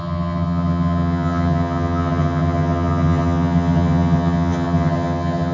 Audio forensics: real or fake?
fake